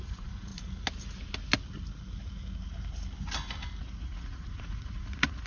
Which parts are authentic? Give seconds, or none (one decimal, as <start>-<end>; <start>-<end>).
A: 0.5-3.8